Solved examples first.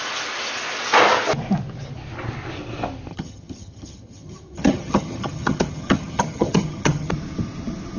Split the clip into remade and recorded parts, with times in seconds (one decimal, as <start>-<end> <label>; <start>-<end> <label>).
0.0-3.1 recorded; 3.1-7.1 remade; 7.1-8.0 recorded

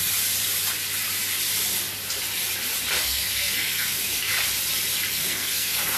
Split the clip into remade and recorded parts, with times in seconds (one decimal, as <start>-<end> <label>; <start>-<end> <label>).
0.0-3.0 recorded; 3.0-4.3 remade; 4.3-5.1 recorded; 5.1-6.0 remade

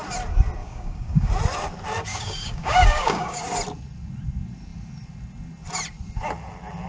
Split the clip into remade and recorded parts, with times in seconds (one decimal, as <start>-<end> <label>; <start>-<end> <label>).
0.0-0.6 recorded; 0.6-1.3 remade; 1.3-2.1 recorded; 2.1-3.4 remade; 3.4-6.9 recorded

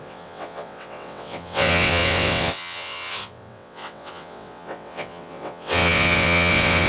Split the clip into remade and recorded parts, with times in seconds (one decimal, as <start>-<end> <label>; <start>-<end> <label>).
0.0-6.9 remade

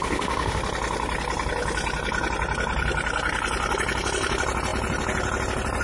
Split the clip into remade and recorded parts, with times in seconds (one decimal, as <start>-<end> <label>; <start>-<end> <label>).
0.0-0.6 remade; 0.6-5.8 recorded

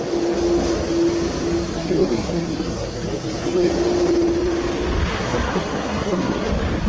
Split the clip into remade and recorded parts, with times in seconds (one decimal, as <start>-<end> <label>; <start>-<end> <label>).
0.0-1.7 recorded; 1.7-3.7 remade; 3.7-5.1 recorded; 5.1-6.5 remade; 6.5-6.9 recorded

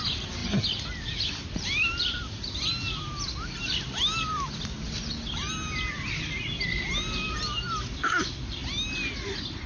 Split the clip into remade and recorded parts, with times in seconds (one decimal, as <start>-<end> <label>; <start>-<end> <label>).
0.0-9.7 recorded

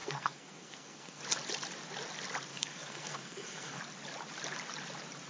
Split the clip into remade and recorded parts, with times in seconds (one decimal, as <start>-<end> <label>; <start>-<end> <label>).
0.0-1.2 remade; 1.2-2.5 recorded; 2.5-3.8 remade; 3.8-5.3 recorded